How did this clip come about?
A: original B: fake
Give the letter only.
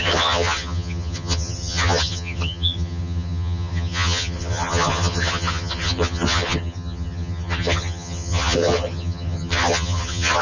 B